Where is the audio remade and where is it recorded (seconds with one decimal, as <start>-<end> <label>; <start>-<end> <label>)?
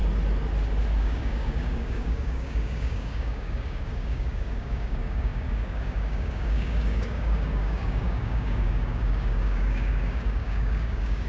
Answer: 0.0-1.0 recorded; 1.0-11.3 remade